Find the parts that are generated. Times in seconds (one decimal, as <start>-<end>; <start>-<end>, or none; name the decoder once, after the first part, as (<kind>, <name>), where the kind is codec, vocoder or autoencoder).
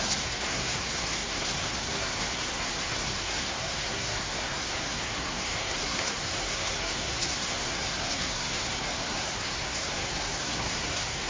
0.0-11.3 (codec, SNAC)